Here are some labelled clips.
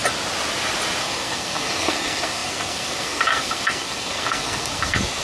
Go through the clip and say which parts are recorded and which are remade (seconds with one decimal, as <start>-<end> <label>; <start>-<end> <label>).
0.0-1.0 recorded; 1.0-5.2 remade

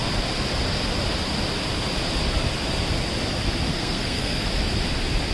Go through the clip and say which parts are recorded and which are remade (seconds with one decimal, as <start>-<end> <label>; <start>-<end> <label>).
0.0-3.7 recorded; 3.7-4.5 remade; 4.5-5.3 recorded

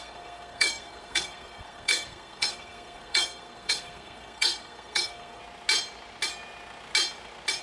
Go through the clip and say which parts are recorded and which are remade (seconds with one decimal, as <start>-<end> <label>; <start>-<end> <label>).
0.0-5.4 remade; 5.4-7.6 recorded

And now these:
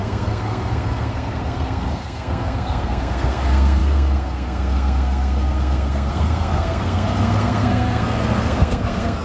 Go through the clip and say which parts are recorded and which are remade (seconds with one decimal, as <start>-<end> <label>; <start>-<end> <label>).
0.0-9.2 remade

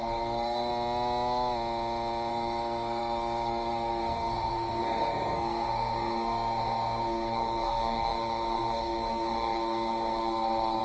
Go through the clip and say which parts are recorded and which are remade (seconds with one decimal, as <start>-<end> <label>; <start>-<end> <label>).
0.0-0.7 remade; 0.7-2.3 recorded; 2.3-10.8 remade

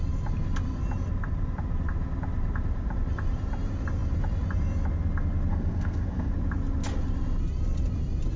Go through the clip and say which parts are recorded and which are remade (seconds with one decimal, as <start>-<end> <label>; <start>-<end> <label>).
0.0-5.5 recorded; 5.5-6.3 remade; 6.3-8.4 recorded

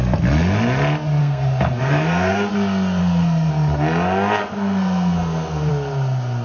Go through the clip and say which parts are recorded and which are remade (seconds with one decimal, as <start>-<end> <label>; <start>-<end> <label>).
0.0-1.2 recorded; 1.2-2.5 remade; 2.5-3.0 recorded; 3.0-3.5 remade; 3.5-4.4 recorded; 4.4-5.7 remade; 5.7-6.4 recorded